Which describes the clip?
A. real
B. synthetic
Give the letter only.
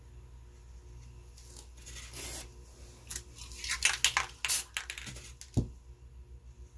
A